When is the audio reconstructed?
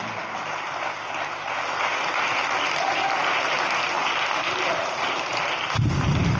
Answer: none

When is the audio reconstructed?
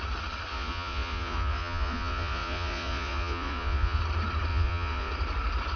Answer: 0.5-4.0 (vocoder, Vocos); 4.5-5.1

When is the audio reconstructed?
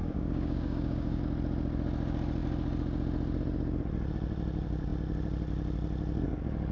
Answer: 0.0-1.2 (codec, DAC)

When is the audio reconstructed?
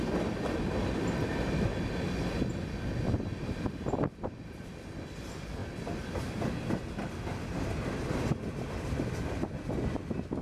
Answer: none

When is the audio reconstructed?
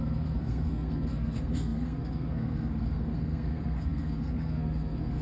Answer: 0.0-5.2 (codec, SNAC)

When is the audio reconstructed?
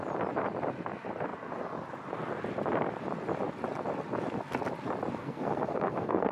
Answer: 5.2-6.3 (codec, SNAC)